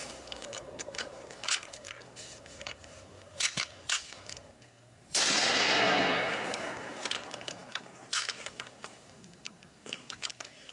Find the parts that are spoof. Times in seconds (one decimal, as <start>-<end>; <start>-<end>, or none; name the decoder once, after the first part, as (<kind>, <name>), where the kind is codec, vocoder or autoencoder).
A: 0.0-10.7 (codec, SNAC)